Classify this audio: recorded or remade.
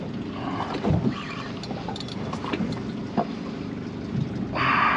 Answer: recorded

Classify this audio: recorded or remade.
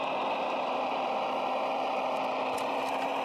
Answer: remade